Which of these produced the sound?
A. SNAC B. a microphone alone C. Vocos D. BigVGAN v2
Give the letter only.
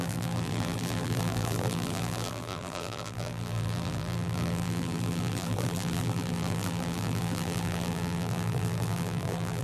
D